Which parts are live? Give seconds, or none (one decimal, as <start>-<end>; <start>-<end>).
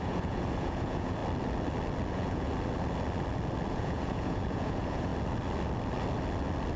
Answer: 1.2-2.1; 2.5-3.7; 5.1-6.8